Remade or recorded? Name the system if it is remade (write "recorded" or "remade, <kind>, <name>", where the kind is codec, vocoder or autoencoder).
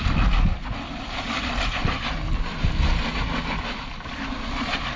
recorded